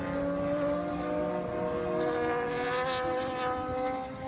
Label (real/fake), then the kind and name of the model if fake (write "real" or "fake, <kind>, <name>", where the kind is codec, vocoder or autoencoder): real